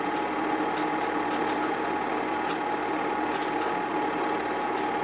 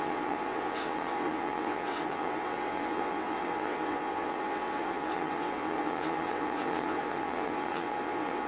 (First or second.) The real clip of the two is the first